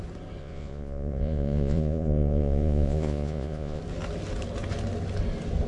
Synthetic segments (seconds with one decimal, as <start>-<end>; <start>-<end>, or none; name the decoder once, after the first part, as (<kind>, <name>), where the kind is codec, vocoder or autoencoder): 0.4-3.8 (vocoder, Vocos)